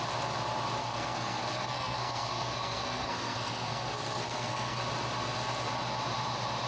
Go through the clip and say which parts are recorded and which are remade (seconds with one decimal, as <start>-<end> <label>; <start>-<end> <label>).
0.0-0.8 recorded; 0.8-4.8 remade; 4.8-6.7 recorded